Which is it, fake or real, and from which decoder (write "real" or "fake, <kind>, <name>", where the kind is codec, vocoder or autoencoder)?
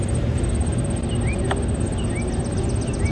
real